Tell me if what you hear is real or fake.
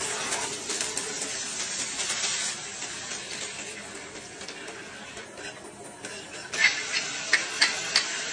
real